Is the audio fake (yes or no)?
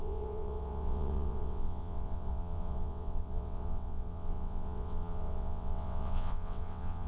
yes